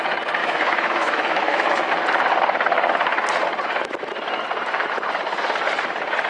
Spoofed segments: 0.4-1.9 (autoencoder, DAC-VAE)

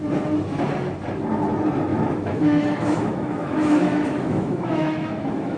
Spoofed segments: 1.9-5.6 (autoencoder, DAC-VAE)

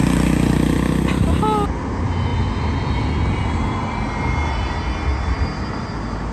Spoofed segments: none

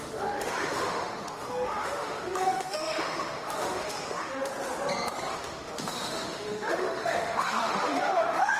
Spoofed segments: 0.0-4.5 (autoencoder, DAC-VAE); 5.3-8.6

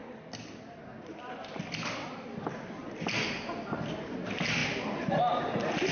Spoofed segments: none

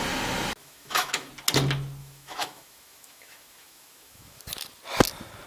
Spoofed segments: 0.6-1.3 (autoencoder, DAC-VAE); 2.0-4.4